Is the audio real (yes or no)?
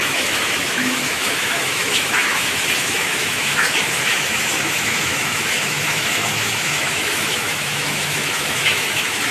no